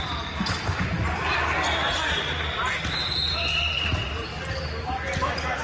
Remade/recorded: recorded